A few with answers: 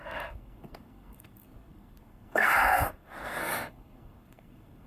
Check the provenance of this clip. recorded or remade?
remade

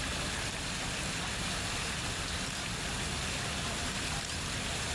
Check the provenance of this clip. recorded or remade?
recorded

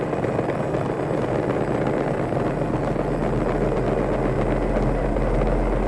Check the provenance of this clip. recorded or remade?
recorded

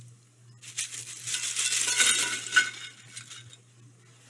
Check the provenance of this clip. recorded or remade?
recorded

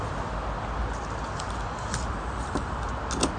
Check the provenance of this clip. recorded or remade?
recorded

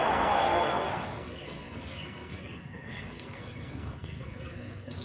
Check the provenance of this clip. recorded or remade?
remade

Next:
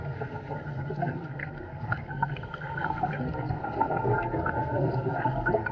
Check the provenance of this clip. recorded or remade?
remade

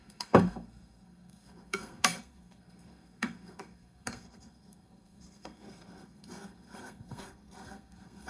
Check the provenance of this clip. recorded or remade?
remade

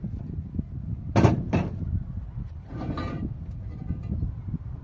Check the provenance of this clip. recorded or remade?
recorded